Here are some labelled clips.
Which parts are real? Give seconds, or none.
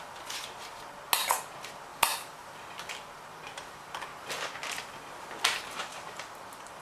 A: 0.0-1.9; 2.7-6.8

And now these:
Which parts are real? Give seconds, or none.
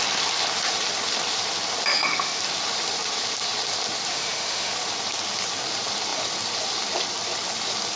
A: 0.0-1.9; 2.4-4.1; 4.7-8.0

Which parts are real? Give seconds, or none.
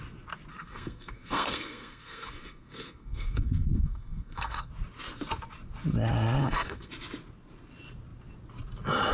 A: 0.0-0.5; 4.7-6.4; 6.9-9.1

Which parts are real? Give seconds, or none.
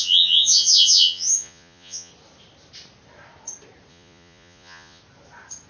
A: 2.1-3.9; 5.0-5.7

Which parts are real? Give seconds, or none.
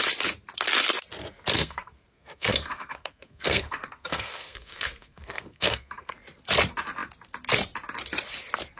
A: 0.0-1.5; 6.1-8.8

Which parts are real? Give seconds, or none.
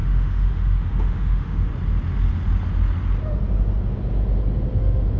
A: 1.7-4.8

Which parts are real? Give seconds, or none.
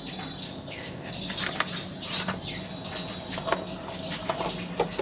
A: 0.0-0.4; 1.1-5.0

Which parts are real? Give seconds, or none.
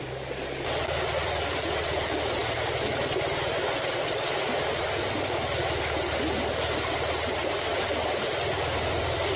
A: 0.0-2.4; 4.5-7.7